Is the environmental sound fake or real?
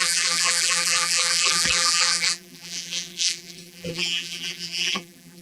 fake